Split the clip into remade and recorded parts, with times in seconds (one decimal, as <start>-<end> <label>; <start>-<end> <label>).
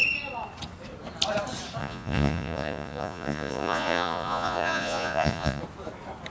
0.0-1.8 recorded; 1.8-5.6 remade; 5.6-6.3 recorded